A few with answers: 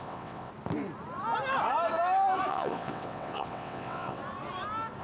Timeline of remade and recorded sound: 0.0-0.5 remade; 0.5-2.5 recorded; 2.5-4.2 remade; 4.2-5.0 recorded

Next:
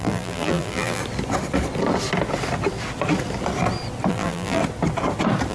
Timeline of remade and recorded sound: 0.0-1.0 remade; 1.0-4.1 recorded; 4.1-4.6 remade; 4.6-5.5 recorded

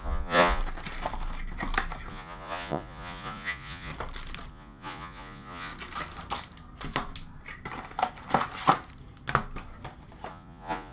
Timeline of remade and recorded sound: 0.0-0.6 remade; 0.6-2.1 recorded; 2.1-3.9 remade; 3.9-4.5 recorded; 4.5-5.7 remade; 5.7-10.3 recorded; 10.3-10.9 remade

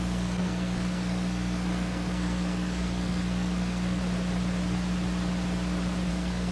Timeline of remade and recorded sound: 0.0-4.0 remade; 4.0-6.1 recorded; 6.1-6.5 remade

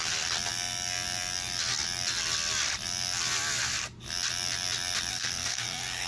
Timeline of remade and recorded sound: 0.0-5.1 recorded; 5.1-6.1 remade

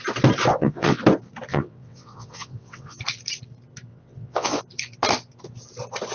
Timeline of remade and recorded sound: 0.0-0.5 recorded; 0.5-1.0 remade; 1.0-1.5 recorded; 1.5-3.0 remade; 3.0-3.9 recorded; 3.9-4.6 remade; 4.6-6.1 recorded

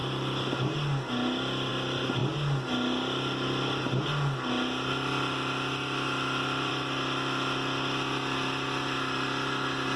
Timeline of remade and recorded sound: 0.0-10.0 recorded

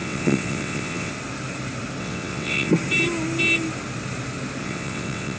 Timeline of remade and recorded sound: 0.0-1.1 remade; 1.1-2.0 recorded; 2.0-2.7 remade; 2.7-4.6 recorded; 4.6-5.4 remade